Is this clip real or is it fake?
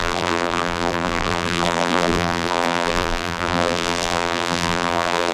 fake